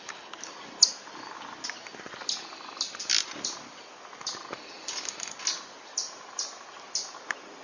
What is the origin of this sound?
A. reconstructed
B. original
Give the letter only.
B